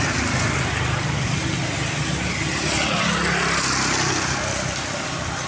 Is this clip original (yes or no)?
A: yes